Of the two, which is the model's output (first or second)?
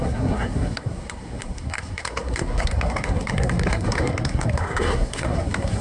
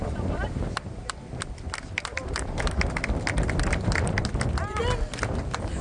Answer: first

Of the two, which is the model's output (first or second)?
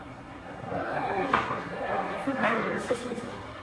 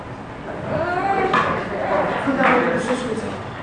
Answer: first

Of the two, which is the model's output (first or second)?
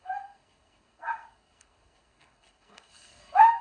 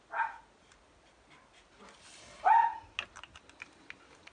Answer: first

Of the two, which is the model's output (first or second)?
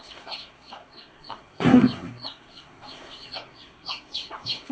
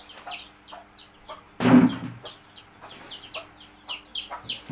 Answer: first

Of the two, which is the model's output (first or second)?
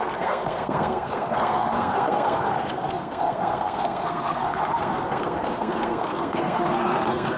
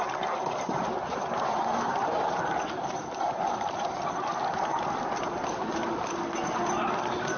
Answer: first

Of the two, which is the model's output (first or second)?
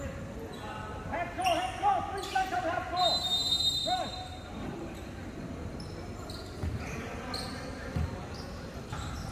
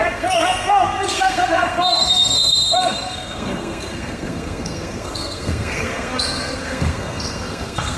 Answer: second